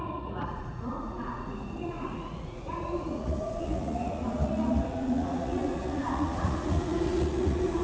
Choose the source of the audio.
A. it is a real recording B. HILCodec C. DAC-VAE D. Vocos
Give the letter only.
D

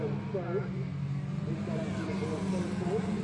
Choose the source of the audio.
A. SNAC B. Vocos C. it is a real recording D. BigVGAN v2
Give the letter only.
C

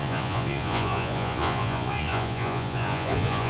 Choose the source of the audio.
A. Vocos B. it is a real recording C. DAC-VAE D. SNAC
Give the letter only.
A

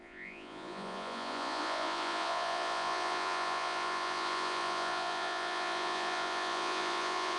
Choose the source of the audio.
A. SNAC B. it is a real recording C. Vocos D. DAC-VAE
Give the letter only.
C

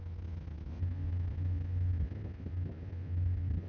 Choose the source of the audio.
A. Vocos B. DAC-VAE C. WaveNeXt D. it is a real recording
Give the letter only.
D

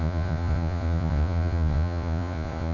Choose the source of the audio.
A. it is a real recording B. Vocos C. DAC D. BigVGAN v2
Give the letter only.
B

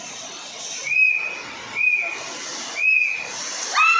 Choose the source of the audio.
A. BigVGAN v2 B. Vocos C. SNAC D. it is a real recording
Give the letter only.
D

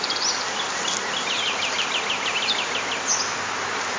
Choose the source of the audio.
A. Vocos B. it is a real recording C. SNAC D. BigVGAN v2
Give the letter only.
B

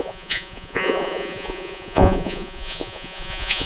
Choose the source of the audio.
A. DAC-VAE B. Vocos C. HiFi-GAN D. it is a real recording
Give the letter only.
B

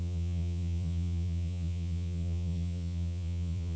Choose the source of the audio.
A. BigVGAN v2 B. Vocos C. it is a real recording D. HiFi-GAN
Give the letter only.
B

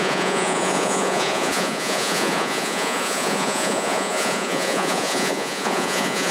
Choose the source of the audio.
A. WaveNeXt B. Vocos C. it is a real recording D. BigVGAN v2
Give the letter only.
B